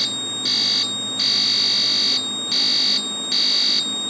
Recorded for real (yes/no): yes